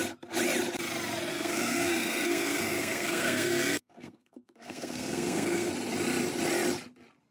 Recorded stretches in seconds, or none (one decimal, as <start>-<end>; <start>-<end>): 0.0-1.3; 5.7-7.3